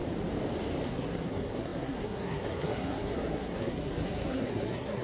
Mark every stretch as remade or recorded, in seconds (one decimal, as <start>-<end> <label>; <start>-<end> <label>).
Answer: 0.0-0.9 recorded; 0.9-5.0 remade